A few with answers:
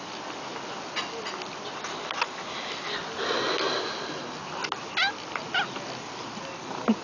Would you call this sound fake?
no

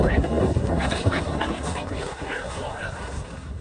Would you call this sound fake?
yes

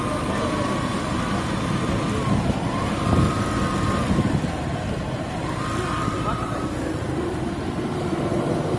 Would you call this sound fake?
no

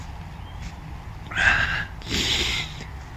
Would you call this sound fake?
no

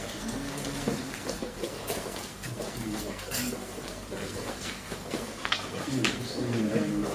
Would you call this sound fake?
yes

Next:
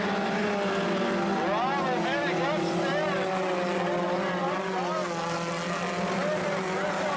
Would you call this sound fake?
no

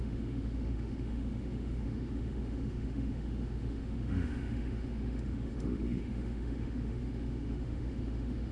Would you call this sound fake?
yes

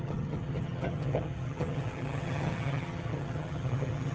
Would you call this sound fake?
yes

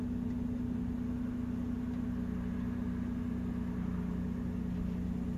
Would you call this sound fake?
no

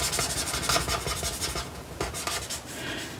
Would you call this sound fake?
no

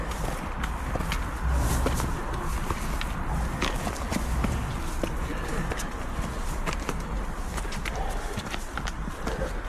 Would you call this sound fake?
no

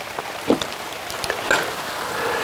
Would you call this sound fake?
no